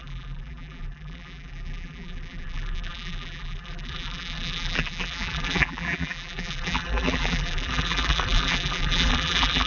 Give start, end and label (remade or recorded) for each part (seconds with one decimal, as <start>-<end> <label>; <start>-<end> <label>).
0.0-9.7 remade